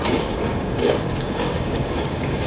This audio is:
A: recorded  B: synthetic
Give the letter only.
B